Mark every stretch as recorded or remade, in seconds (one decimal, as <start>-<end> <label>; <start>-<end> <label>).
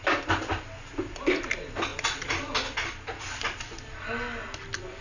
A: 0.0-5.0 recorded